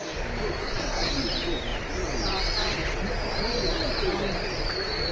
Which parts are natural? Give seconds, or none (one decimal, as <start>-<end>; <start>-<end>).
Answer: 0.0-0.6; 1.1-5.1